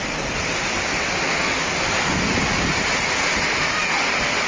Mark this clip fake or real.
real